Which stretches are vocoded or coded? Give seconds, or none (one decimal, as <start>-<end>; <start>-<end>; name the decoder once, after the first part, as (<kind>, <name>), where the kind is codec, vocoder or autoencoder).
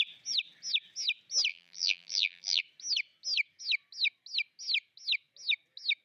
1.5-2.6 (vocoder, BigVGAN v2)